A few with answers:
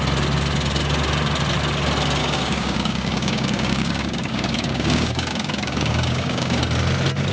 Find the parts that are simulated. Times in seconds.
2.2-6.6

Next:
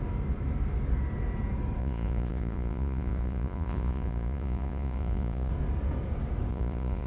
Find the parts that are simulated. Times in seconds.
1.8-5.5; 6.5-7.1

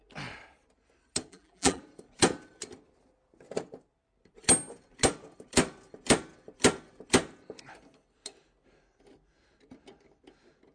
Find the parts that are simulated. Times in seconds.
1.3-1.8

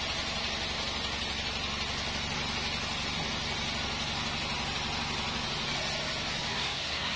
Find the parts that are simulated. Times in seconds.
6.5-7.2

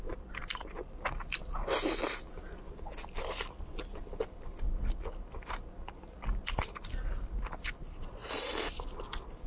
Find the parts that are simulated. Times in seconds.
none

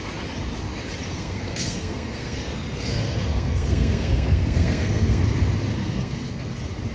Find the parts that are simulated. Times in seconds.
1.1-5.2; 5.8-6.5